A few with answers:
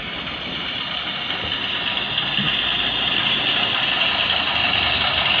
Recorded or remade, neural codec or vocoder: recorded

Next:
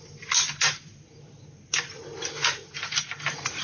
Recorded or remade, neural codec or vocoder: recorded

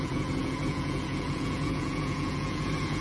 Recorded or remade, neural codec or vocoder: remade, vocoder, Vocos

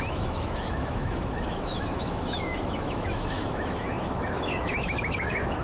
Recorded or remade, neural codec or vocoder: remade, autoencoder, DAC-VAE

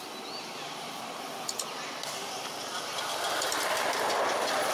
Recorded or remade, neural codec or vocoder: recorded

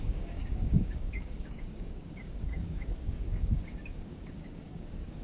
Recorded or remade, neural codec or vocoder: remade, codec, DAC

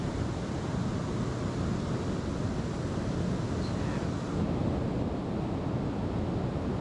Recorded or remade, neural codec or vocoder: recorded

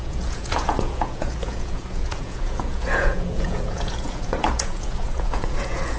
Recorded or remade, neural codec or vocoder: remade, vocoder, Vocos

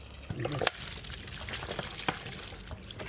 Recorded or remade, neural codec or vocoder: recorded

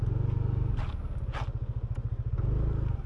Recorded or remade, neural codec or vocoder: recorded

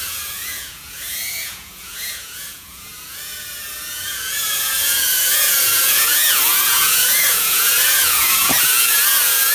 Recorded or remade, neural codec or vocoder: remade, vocoder, Vocos